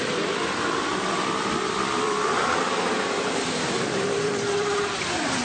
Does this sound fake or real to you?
fake